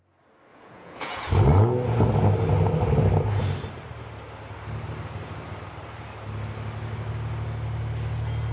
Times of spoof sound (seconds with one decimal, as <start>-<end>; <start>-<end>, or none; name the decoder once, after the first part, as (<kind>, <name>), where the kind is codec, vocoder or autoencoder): 0.5-1.3 (vocoder, Vocos)

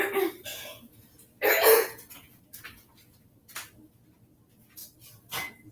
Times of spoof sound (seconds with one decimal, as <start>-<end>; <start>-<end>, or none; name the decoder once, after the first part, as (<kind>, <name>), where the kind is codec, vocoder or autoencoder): 0.5-2.4 (vocoder, Vocos)

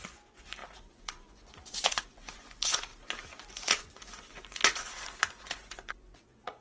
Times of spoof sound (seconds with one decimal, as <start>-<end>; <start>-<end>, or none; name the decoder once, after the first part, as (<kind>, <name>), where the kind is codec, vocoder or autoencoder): 0.0-2.9 (vocoder, Vocos); 3.5-6.6

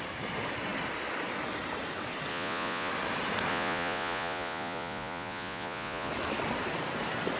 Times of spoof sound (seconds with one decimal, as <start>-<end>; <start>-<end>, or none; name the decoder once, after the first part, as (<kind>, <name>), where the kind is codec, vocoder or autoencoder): 2.3-2.9 (vocoder, Vocos); 3.5-6.1

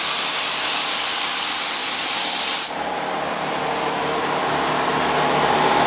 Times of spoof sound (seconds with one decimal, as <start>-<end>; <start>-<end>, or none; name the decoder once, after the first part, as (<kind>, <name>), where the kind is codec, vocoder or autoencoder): none